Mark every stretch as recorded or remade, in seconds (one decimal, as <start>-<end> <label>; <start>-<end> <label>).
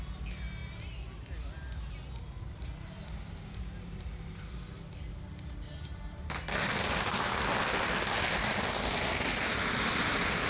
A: 0.0-10.5 recorded